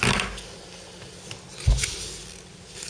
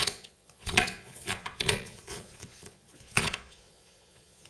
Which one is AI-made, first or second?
second